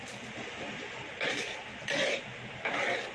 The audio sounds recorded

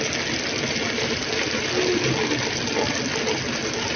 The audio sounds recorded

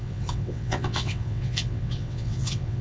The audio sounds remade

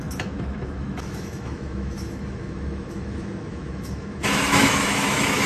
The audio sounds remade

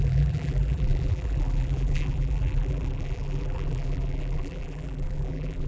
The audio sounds remade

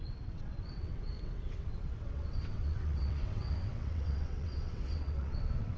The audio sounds remade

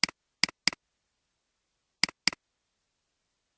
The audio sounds recorded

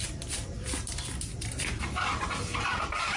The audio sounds remade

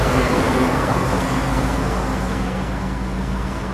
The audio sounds remade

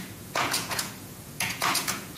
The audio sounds remade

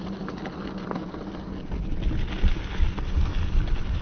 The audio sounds recorded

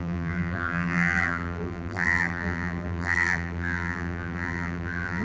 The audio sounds remade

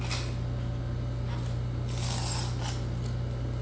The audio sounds recorded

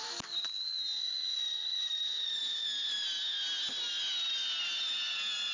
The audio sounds recorded